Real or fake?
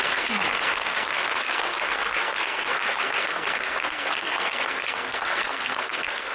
fake